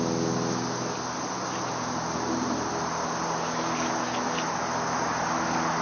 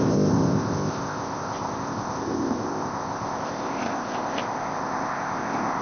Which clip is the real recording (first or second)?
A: first